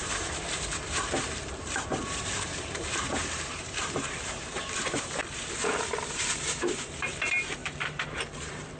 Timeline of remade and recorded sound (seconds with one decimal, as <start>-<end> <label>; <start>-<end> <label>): 0.0-5.2 remade; 5.2-6.1 recorded; 6.1-8.8 remade